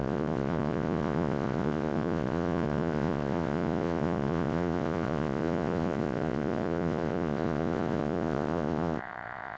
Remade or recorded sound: remade